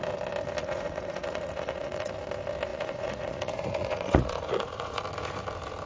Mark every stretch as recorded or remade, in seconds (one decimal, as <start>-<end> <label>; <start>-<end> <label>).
0.0-0.6 recorded; 0.6-2.1 remade; 2.1-2.7 recorded; 2.7-5.0 remade; 5.0-5.9 recorded